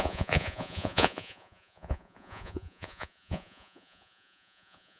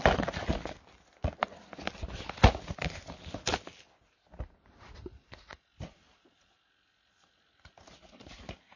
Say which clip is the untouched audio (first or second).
second